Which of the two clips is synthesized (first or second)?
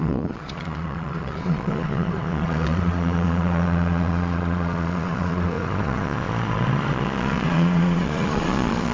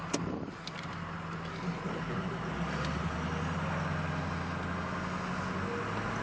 first